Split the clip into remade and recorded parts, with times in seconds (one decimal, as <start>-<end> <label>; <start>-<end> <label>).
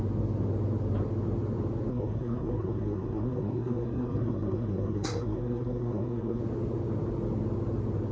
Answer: 0.0-1.9 recorded; 1.9-6.4 remade; 6.4-8.1 recorded